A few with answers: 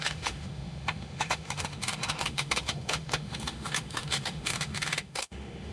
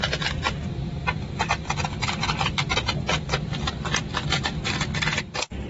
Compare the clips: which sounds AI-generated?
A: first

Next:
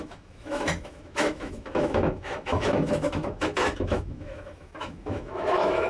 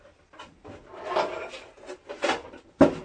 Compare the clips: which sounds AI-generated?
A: first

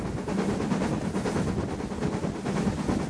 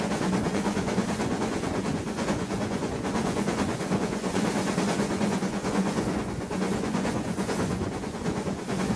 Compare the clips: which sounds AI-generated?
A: second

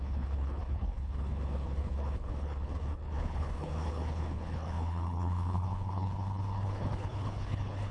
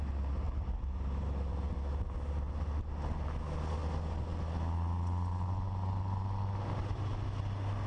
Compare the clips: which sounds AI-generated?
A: first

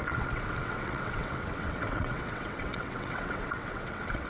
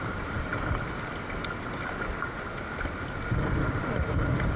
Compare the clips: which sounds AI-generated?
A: first